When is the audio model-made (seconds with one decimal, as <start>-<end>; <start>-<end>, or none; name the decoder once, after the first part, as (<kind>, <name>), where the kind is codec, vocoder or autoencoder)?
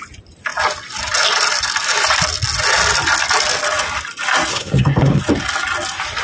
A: 4.5-5.2 (codec, SNAC)